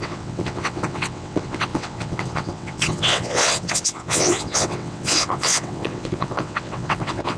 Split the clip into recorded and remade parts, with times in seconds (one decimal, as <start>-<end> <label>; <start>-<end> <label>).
0.0-7.4 remade